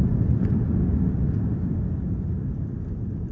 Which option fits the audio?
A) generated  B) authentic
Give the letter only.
B